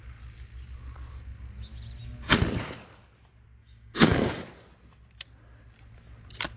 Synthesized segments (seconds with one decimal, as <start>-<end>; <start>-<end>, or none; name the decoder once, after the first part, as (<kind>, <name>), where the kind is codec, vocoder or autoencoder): 3.6-4.4 (codec, DAC)